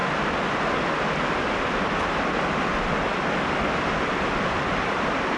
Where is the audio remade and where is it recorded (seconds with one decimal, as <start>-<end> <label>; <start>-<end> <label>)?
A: 0.0-5.4 recorded